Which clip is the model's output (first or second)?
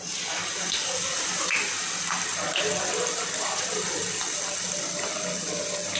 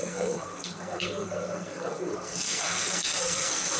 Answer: second